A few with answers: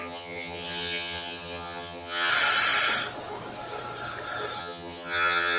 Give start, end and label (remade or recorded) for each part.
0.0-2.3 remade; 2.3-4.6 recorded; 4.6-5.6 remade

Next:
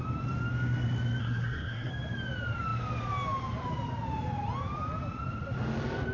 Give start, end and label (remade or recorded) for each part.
0.0-1.2 recorded; 1.2-1.9 remade; 1.9-6.1 recorded